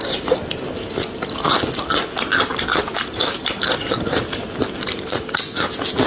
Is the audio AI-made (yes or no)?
no